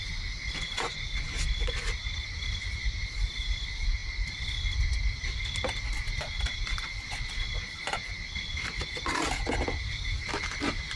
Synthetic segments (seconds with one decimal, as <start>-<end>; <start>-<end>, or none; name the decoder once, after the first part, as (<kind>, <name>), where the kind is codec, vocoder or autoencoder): none